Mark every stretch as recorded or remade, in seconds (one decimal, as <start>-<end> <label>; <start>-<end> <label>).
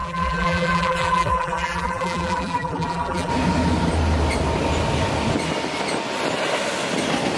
0.0-3.3 remade; 3.3-7.4 recorded